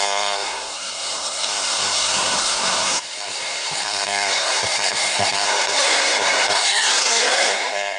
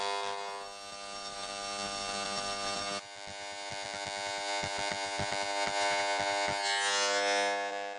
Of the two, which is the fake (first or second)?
first